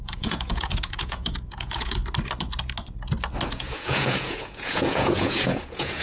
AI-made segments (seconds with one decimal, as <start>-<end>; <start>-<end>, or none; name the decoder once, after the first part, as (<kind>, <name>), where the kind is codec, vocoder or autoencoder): 0.0-2.0 (vocoder, Vocos); 3.5-6.0